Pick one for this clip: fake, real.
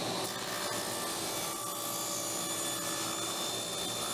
real